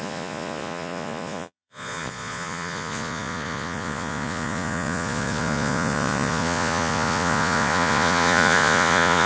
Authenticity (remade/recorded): remade